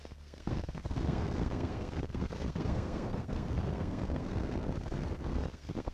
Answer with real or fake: fake